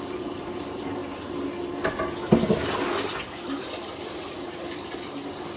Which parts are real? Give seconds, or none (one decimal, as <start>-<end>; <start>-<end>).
1.0-4.4